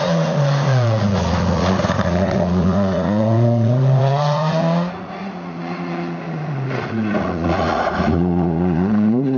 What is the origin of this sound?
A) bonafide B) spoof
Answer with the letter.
B